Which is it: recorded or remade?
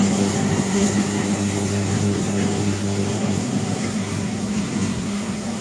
remade